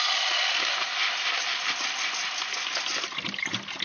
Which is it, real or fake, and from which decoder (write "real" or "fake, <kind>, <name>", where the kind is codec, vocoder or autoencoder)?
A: real